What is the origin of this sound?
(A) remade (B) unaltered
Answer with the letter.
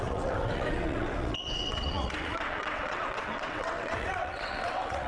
A